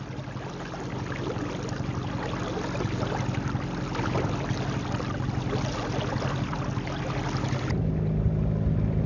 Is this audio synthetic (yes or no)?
no